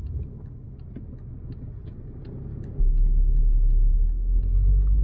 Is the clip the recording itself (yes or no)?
yes